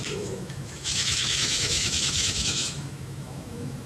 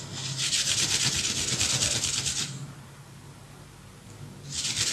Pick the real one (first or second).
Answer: second